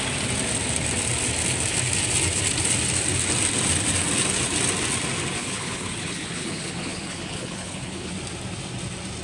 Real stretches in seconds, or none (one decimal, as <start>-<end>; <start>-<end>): 0.0-5.4; 8.1-9.2